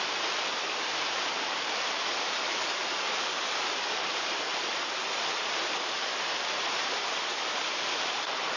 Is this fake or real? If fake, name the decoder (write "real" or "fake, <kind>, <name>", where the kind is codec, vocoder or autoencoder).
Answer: fake, vocoder, BigVGAN v2